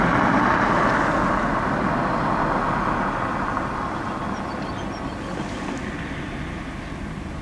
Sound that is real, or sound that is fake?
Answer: real